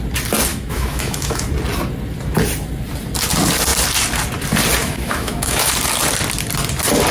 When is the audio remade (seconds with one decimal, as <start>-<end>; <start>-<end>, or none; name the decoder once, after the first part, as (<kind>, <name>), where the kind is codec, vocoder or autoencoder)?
0.5-1.4 (autoencoder, DAC-VAE); 4.8-5.7